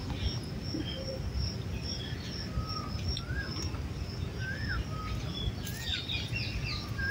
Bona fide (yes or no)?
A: yes